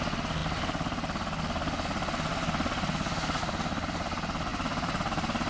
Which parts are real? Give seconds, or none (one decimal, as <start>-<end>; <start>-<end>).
0.0-4.5